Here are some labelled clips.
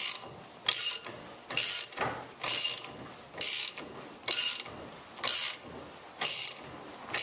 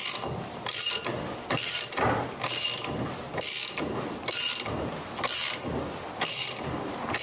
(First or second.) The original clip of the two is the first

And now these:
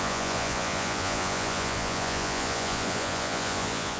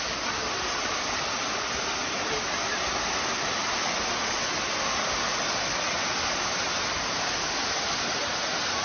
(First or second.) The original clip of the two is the second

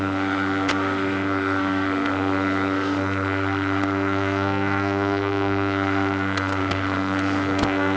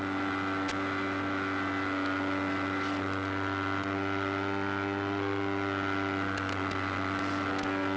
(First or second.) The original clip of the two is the second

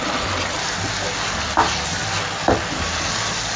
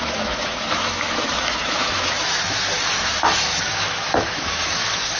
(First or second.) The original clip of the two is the first